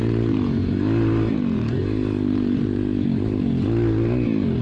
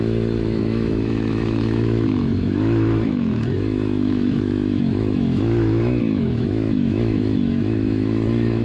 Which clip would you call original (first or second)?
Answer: first